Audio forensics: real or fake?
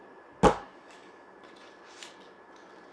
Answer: real